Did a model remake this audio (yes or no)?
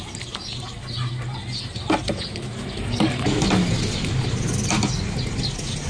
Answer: no